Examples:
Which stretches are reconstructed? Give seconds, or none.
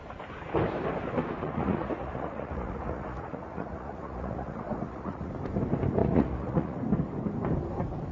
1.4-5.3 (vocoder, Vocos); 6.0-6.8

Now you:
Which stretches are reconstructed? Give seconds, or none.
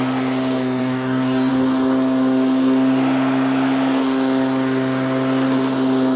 0.8-1.5 (codec, DAC)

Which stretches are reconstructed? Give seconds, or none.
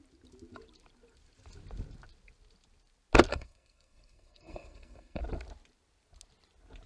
3.3-5.2 (codec, SNAC)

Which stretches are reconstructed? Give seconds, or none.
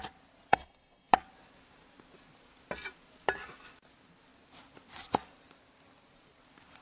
0.5-1.1 (codec, SNAC)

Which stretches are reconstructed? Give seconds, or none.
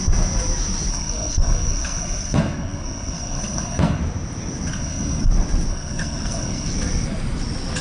0.9-4.0 (codec, SNAC); 4.7-5.3; 5.7-6.7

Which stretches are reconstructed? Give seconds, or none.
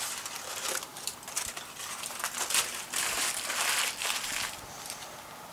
0.0-5.5 (vocoder, BigVGAN v2)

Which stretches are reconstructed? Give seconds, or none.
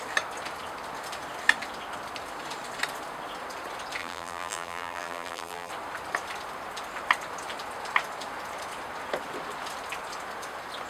4.0-5.7 (vocoder, BigVGAN v2)